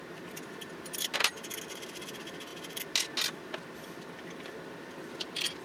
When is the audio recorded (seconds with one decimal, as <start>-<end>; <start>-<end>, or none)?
0.0-5.6